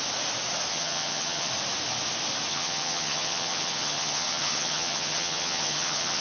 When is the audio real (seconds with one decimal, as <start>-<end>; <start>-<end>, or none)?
0.0-0.7; 1.5-2.5